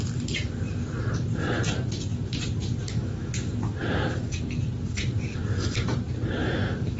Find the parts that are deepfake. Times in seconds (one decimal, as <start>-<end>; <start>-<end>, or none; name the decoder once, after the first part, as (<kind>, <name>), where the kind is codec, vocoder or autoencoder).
2.8-3.3 (autoencoder, DAC-VAE); 6.4-7.0